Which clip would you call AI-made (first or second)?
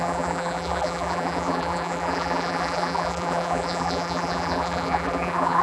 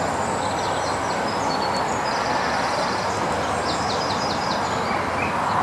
first